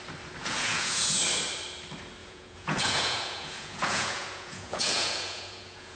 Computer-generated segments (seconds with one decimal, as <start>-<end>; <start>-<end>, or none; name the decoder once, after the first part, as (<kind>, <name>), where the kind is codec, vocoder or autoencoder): 0.4-1.2 (vocoder, Vocos); 2.2-6.0